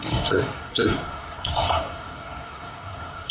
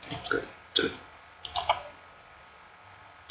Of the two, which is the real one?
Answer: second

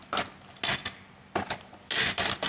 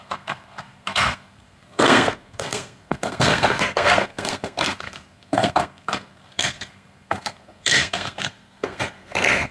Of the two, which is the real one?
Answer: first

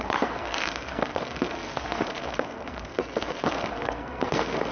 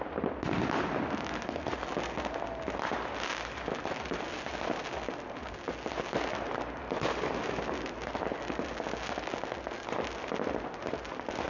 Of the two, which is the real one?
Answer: second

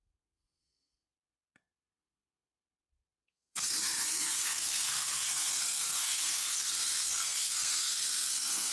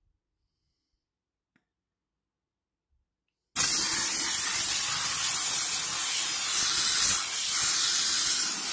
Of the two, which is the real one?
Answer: second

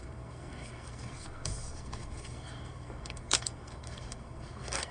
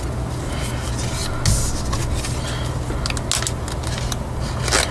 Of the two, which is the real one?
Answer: second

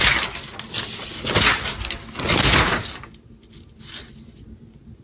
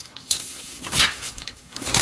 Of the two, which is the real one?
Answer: first